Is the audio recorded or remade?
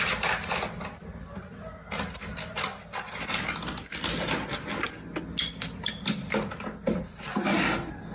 recorded